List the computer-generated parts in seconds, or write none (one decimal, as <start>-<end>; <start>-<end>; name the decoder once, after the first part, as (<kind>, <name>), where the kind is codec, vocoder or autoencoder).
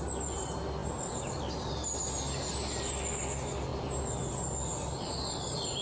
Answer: none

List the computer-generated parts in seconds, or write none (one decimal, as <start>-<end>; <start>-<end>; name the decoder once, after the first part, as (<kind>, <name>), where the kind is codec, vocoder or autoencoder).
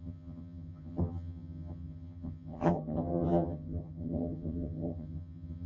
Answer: 0.0-5.7 (vocoder, HiFi-GAN)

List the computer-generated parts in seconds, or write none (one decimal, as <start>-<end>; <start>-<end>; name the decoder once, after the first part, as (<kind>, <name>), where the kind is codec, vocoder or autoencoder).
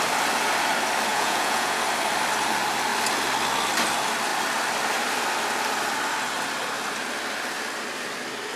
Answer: 1.1-1.8 (vocoder, Vocos)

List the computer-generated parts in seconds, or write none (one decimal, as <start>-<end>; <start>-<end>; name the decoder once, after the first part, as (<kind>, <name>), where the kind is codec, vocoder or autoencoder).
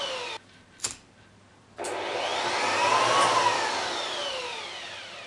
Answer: 2.3-4.6 (vocoder, BigVGAN v2)